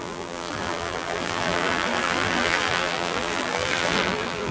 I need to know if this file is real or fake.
fake